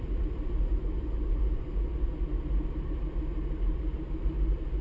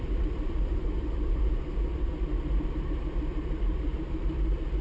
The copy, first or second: second